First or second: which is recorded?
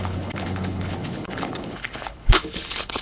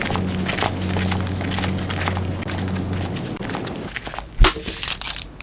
second